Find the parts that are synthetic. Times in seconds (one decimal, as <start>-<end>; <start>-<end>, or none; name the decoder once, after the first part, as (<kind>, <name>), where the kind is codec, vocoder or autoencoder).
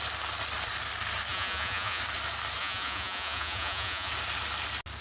1.3-2.0 (vocoder, Vocos); 2.6-4.1